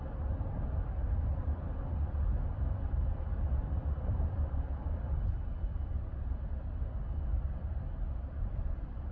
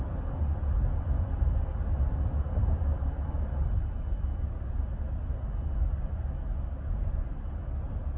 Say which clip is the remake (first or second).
first